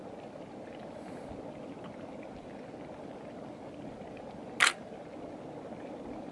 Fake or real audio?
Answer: real